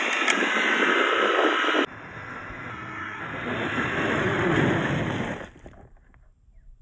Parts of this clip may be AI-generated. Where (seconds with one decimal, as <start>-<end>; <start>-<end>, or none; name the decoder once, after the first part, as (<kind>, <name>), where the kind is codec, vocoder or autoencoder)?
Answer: 2.7-3.2 (codec, SNAC)

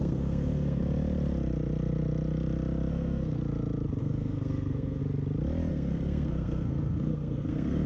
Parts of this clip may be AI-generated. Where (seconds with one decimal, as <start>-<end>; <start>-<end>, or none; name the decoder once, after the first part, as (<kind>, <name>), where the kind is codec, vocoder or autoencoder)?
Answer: 0.0-0.8 (codec, SNAC); 2.9-3.4; 4.0-5.0; 5.7-7.9

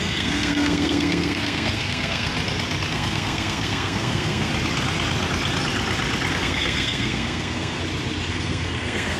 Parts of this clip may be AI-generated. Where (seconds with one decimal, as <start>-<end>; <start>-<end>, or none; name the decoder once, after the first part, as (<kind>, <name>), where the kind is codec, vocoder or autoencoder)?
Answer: 0.0-2.3 (codec, SNAC); 2.9-4.5; 6.3-7.8; 8.3-9.2

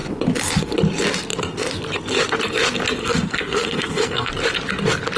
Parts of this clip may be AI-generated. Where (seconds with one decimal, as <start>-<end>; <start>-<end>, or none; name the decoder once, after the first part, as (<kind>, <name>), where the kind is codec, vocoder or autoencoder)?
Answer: 3.0-4.3 (codec, SNAC)

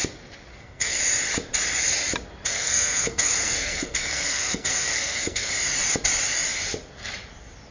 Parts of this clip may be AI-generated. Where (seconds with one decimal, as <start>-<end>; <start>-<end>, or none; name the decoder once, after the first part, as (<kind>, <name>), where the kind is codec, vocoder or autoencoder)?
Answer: 0.5-1.0 (codec, SNAC); 2.5-5.5